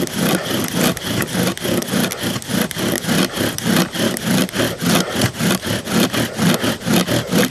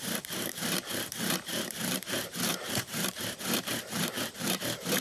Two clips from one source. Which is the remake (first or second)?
second